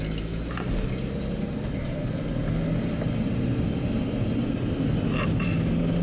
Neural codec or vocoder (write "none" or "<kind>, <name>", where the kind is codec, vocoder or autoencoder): none